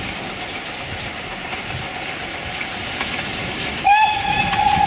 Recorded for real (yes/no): yes